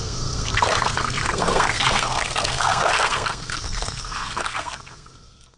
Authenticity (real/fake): fake